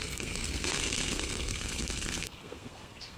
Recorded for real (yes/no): no